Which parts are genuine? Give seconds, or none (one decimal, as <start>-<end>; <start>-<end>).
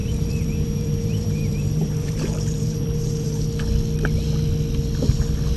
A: 3.4-5.6